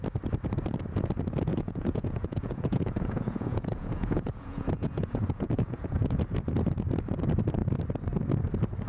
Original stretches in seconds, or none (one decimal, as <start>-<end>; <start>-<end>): 0.0-1.5; 6.2-8.9